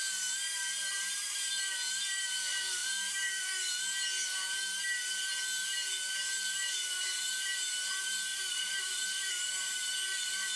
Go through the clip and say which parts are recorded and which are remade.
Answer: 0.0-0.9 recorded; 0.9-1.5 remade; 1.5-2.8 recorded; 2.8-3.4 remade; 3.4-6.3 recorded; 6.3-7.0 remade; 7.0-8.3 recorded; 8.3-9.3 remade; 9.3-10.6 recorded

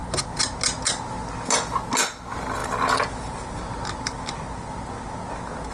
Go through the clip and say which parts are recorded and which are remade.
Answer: 0.0-5.7 recorded

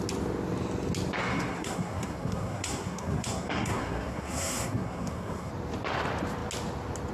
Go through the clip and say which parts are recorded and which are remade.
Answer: 0.0-1.2 recorded; 1.2-5.5 remade; 5.5-7.1 recorded